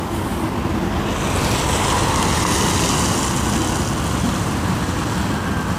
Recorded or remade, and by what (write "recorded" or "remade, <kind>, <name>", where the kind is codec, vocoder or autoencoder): recorded